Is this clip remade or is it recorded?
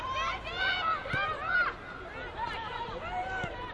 recorded